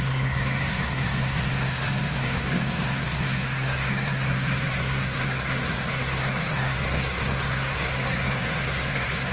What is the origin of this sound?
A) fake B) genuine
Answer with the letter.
A